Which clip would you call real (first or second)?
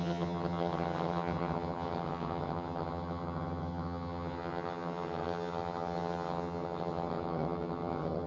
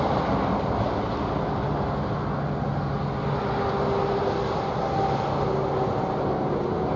second